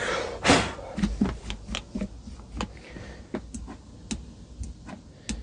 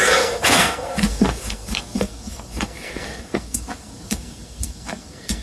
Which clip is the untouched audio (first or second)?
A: first